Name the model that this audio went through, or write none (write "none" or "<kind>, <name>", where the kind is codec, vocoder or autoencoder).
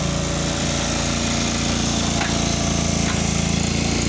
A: none